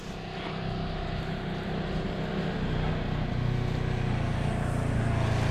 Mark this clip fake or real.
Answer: real